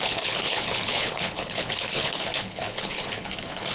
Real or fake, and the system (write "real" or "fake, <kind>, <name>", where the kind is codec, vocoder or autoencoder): fake, codec, HILCodec